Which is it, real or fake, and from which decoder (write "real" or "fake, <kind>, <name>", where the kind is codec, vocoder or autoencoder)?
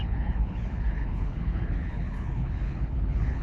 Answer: fake, codec, HILCodec